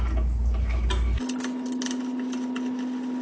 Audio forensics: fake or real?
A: real